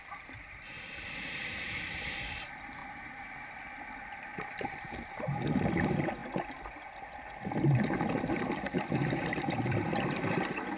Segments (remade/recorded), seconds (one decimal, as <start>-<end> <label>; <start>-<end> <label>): 0.0-2.8 remade; 2.8-3.5 recorded; 3.5-6.2 remade; 6.2-8.1 recorded; 8.1-10.8 remade